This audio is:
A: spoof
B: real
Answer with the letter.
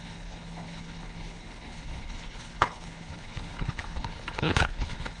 A